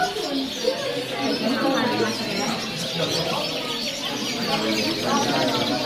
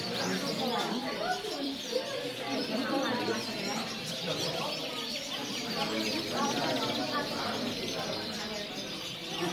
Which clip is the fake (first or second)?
second